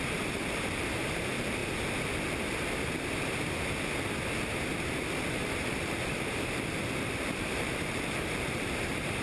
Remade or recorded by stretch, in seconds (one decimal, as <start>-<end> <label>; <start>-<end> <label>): 0.0-1.6 remade; 1.6-5.3 recorded; 5.3-9.2 remade